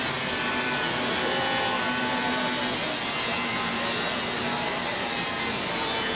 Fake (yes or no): no